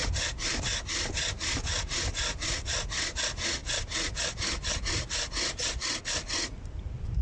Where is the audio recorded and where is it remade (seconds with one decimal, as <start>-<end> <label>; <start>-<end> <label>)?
0.0-0.7 remade; 0.7-7.2 recorded